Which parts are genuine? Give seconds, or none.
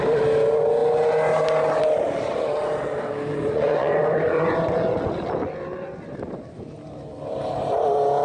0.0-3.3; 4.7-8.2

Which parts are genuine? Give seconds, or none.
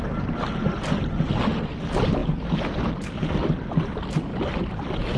0.0-5.2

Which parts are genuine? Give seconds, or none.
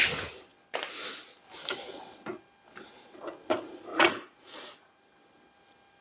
0.0-3.9; 5.0-6.0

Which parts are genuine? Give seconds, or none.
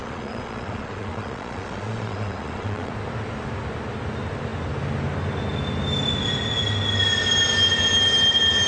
2.9-8.7